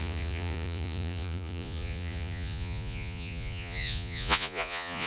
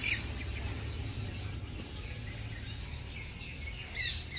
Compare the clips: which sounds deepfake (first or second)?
first